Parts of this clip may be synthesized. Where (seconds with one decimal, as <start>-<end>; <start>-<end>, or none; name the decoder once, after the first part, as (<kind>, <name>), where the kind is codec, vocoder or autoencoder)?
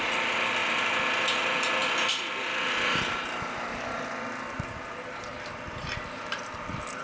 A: none